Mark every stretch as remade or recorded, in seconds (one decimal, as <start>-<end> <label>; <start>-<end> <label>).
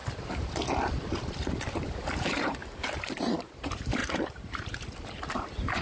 0.0-2.2 recorded; 2.2-5.8 remade